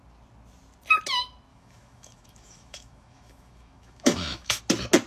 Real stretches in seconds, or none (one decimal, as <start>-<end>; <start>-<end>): 0.0-1.5; 4.6-5.1